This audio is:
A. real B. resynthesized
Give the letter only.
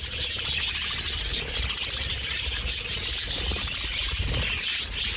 A